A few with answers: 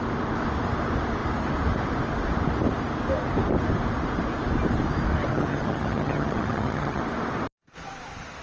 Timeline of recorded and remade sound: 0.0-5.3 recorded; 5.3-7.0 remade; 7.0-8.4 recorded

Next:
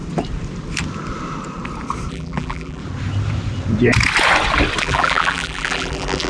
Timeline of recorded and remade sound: 0.0-2.1 recorded; 2.1-2.8 remade; 2.8-4.8 recorded; 4.8-6.3 remade

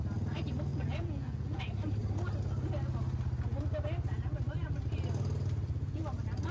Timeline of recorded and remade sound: 0.0-0.7 recorded; 0.7-1.6 remade; 1.6-6.5 recorded

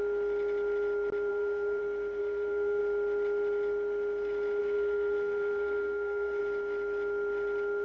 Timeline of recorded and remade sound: 0.0-1.3 recorded; 1.3-1.8 remade; 1.8-2.2 recorded; 2.2-2.8 remade; 2.8-4.6 recorded; 4.6-6.4 remade; 6.4-7.8 recorded